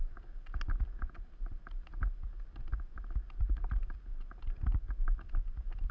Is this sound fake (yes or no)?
no